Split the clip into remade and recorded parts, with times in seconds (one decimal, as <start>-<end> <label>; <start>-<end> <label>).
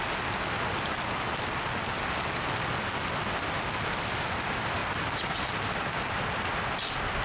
0.0-7.2 recorded